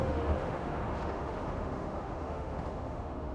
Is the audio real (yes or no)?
no